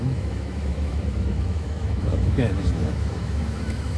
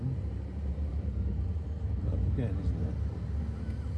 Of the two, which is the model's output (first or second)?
first